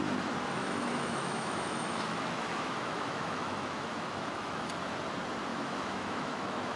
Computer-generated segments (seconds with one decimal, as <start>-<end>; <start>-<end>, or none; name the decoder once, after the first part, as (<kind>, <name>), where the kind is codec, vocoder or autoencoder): 0.6-4.7 (autoencoder, DAC-VAE); 5.5-6.8